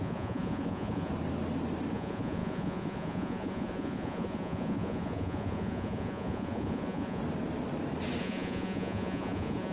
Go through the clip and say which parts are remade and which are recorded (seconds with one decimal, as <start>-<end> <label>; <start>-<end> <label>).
0.0-1.1 remade; 1.1-1.9 recorded; 1.9-7.2 remade; 7.2-8.2 recorded; 8.2-9.7 remade